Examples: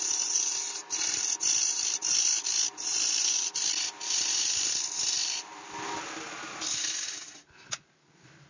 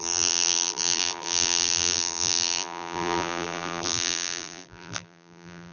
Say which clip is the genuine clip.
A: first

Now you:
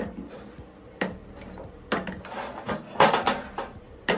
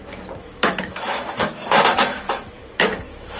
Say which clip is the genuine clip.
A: first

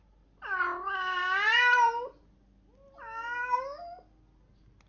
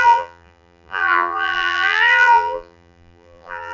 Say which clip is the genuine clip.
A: first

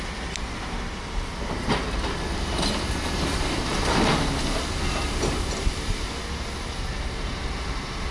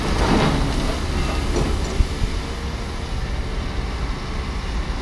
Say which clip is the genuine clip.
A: second